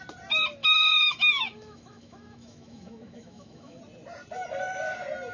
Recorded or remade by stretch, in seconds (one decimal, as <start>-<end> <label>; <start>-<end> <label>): 0.0-0.6 recorded; 0.6-3.8 remade; 3.8-5.3 recorded